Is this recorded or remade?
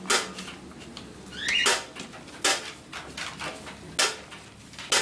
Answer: recorded